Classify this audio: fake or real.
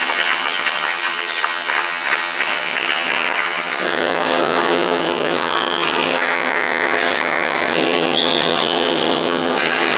fake